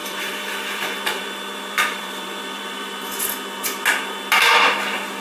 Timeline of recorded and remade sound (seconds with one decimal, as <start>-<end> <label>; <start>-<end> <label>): 0.0-3.1 remade; 3.1-5.2 recorded